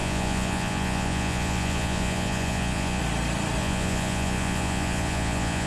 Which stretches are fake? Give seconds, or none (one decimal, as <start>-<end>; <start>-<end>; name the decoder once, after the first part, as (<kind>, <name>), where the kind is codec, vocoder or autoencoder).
0.0-3.0 (vocoder, Vocos); 3.6-5.7